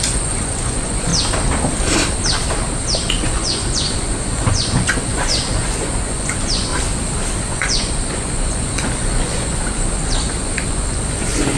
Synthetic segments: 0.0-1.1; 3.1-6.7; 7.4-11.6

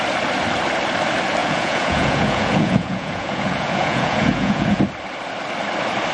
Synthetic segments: 1.4-4.8

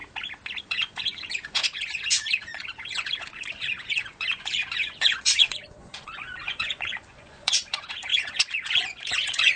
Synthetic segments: 0.6-9.6